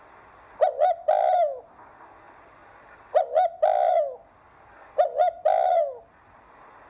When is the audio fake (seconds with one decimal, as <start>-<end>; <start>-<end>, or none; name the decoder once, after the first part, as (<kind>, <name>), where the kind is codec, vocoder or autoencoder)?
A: none